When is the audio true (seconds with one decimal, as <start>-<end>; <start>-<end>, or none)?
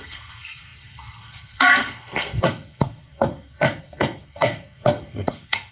none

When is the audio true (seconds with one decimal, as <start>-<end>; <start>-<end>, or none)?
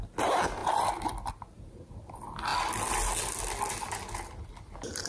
0.0-5.1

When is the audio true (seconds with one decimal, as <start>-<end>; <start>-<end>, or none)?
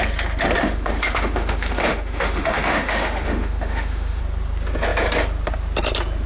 0.0-0.6; 4.2-6.3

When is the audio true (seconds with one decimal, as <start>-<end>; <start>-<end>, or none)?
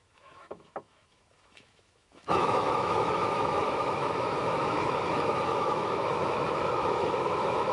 none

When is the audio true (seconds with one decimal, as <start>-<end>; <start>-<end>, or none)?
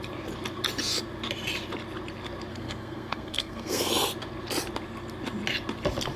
0.0-2.5; 3.9-6.2